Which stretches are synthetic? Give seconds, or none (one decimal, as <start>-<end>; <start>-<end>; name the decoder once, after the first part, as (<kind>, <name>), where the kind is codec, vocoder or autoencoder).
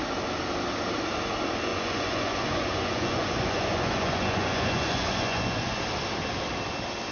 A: 1.7-5.8 (vocoder, Vocos)